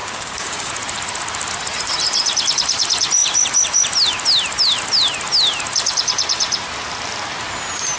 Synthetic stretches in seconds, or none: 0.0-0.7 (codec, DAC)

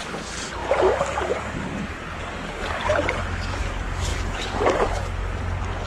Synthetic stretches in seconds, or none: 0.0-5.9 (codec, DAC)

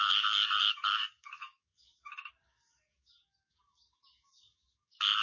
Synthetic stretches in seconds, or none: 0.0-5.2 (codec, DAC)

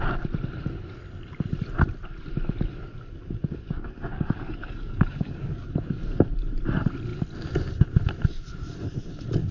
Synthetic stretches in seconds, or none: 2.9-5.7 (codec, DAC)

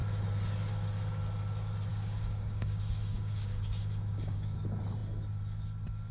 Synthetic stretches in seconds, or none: 1.9-4.6 (codec, DAC)

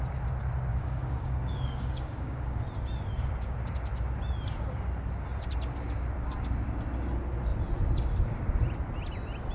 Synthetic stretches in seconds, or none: 0.7-2.6 (codec, DAC)